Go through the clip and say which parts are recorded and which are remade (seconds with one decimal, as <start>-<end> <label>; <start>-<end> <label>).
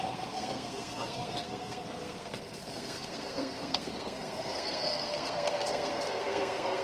0.0-6.8 remade